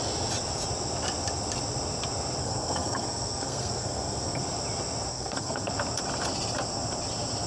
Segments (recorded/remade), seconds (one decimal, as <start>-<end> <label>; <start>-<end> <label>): 0.0-2.4 recorded; 2.4-4.4 remade; 4.4-5.1 recorded; 5.1-5.7 remade; 5.7-7.5 recorded